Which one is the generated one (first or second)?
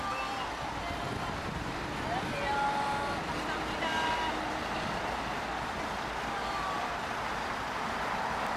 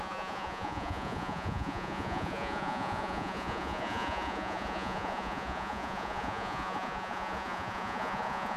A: second